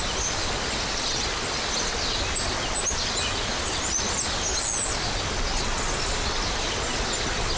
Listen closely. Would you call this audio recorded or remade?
recorded